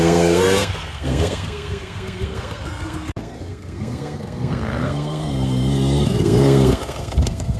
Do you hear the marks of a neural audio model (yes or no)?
yes